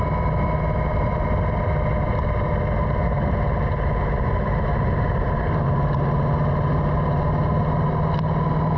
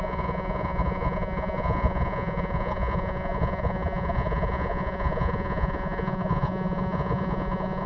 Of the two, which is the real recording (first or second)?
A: first